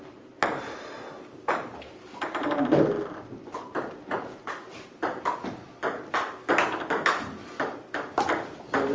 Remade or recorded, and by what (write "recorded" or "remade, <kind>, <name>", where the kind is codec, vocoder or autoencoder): recorded